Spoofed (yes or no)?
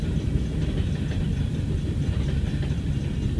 no